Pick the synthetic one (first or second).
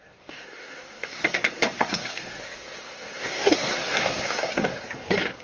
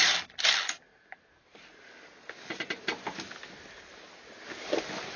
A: first